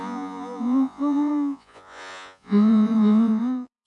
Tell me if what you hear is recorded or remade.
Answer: remade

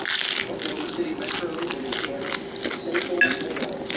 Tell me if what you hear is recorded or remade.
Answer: recorded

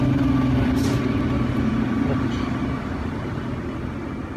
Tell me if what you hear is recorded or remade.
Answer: recorded